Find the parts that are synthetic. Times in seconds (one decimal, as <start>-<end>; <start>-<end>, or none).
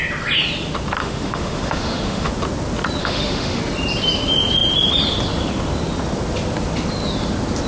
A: 1.0-2.3; 3.0-3.6